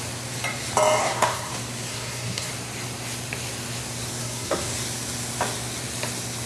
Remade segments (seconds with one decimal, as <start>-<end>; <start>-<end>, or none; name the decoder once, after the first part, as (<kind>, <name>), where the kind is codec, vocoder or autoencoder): 1.0-1.5 (codec, SNAC); 1.9-2.5; 4.2-4.7